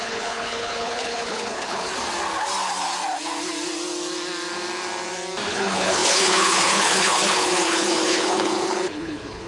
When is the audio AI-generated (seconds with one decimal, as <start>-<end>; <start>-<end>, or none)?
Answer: 0.0-1.9; 5.5-9.5